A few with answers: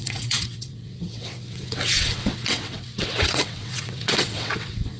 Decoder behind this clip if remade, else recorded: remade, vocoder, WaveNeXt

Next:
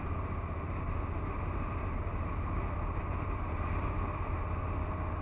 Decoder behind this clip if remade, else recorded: recorded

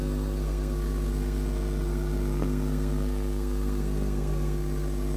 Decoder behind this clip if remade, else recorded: remade, codec, SNAC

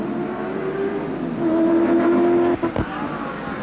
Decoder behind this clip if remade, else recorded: recorded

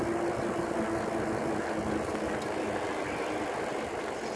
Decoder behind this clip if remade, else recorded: recorded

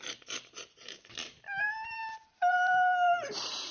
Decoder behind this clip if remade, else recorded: remade, vocoder, BigVGAN v2